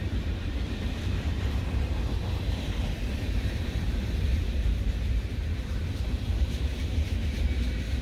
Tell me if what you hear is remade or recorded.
remade